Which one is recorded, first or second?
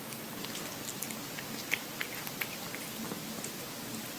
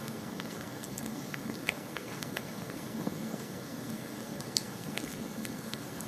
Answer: first